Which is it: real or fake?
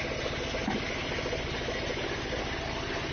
real